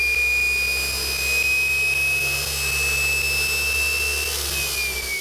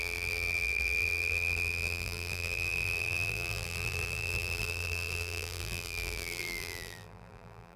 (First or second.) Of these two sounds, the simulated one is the second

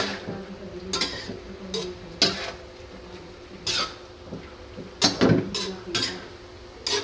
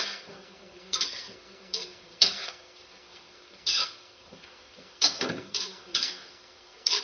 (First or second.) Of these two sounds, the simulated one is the second